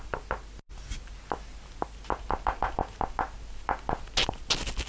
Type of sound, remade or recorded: recorded